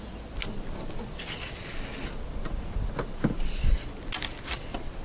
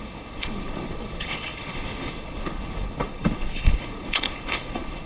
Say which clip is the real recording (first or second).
first